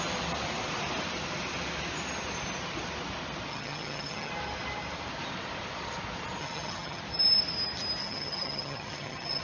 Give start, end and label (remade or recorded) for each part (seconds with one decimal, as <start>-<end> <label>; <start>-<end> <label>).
0.0-3.5 recorded; 3.5-4.3 remade; 4.3-6.4 recorded; 6.4-7.0 remade; 7.0-8.0 recorded; 8.0-9.4 remade